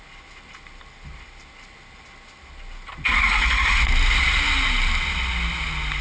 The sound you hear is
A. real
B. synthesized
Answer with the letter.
A